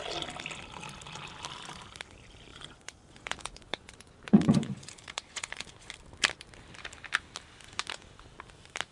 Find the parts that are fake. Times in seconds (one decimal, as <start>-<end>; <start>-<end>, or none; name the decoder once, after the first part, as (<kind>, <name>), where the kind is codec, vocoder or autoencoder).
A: 2.5-5.9 (vocoder, Vocos)